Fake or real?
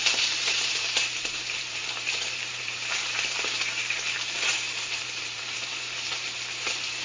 fake